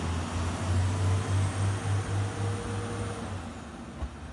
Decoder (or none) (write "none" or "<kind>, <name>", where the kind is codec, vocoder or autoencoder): none